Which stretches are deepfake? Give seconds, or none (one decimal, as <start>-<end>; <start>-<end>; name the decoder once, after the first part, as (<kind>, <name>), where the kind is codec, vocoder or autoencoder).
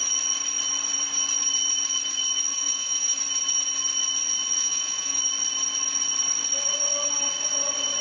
2.5-3.2 (vocoder, Vocos); 4.6-5.2